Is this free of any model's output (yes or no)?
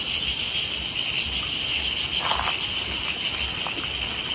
yes